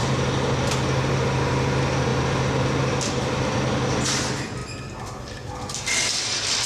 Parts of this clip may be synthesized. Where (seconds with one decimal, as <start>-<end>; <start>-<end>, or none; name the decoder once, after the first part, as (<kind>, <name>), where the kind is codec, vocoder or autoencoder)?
none